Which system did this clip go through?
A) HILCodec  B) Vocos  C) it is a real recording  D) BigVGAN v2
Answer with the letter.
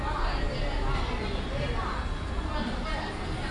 C